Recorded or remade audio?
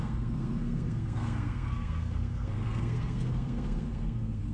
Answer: remade